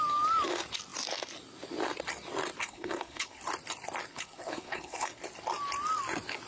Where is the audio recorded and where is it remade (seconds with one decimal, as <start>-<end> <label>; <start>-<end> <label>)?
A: 0.0-2.6 recorded; 2.6-3.4 remade; 3.4-4.1 recorded; 4.1-5.2 remade; 5.2-6.5 recorded